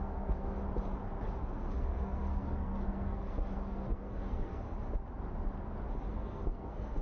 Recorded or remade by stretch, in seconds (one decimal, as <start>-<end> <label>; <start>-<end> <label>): 0.0-0.6 remade; 0.6-1.4 recorded; 1.4-4.7 remade; 4.7-6.1 recorded; 6.1-7.0 remade